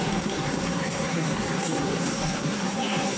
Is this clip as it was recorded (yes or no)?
no